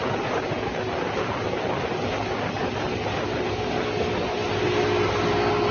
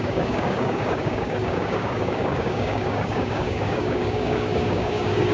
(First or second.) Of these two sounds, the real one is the first